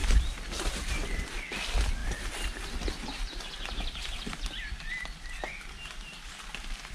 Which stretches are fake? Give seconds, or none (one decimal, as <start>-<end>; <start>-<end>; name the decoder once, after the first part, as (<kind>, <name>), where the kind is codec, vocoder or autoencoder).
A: none